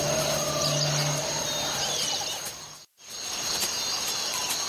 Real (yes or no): yes